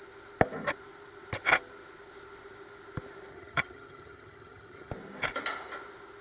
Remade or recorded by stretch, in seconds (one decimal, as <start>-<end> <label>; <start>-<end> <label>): 0.0-3.3 recorded; 3.3-4.9 remade; 4.9-6.2 recorded